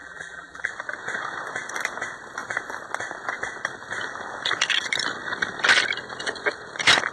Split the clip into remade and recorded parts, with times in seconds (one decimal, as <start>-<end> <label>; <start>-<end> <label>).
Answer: 0.0-0.7 remade; 0.7-7.1 recorded